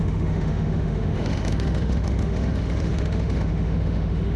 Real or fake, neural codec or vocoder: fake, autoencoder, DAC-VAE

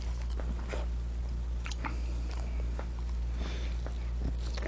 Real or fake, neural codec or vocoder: real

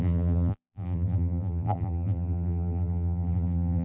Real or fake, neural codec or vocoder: fake, vocoder, BigVGAN v2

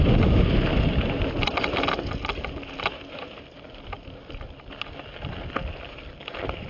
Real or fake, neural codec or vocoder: real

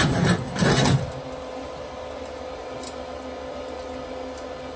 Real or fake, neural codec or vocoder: real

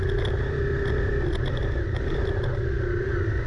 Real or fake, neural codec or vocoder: real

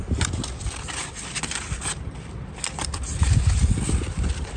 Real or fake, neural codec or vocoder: real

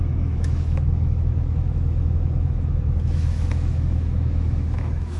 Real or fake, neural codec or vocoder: fake, autoencoder, DAC-VAE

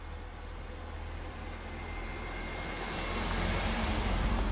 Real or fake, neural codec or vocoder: real